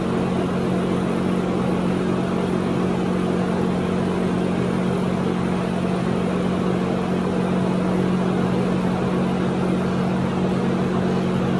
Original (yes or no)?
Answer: yes